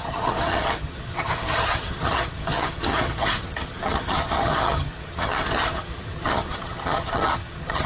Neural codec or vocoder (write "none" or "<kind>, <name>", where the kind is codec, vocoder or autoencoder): vocoder, HiFi-GAN